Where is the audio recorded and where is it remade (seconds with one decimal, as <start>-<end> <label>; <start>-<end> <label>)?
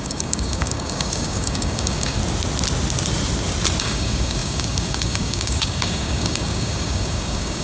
0.0-2.2 remade; 2.2-3.8 recorded; 3.8-7.6 remade